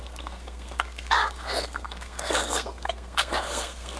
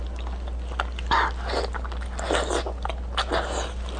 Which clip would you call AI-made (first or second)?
first